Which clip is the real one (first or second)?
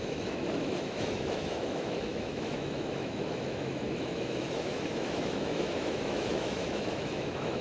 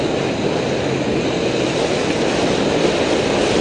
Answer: second